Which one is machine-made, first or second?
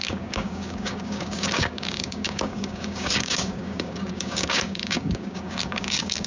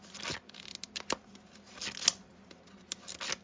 first